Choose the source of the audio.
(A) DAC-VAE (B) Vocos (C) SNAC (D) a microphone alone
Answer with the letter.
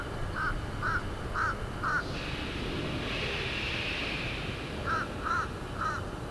D